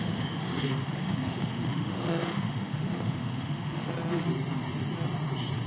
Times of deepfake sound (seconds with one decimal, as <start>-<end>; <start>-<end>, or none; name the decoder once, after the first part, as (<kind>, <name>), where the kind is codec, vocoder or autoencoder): 0.0-3.9 (autoencoder, DAC-VAE)